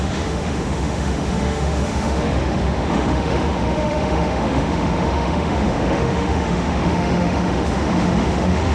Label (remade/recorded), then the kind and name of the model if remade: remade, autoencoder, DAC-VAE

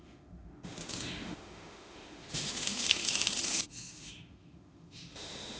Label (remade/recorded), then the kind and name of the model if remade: remade, autoencoder, DAC-VAE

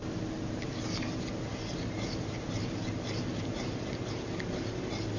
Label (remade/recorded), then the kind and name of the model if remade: recorded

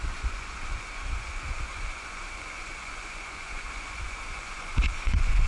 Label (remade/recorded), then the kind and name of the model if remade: remade, vocoder, Vocos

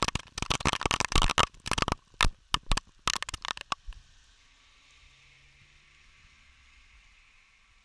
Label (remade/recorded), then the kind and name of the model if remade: recorded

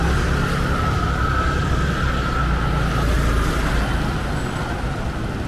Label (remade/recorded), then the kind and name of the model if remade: recorded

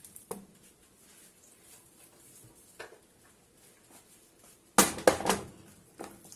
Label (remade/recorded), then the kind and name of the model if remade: recorded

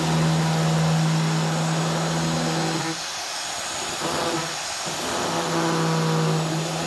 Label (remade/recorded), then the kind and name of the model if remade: recorded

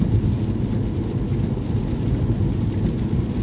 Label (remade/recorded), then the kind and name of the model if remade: recorded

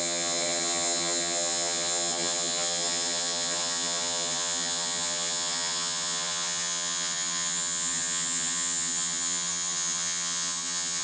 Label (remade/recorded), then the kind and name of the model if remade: remade, vocoder, HiFi-GAN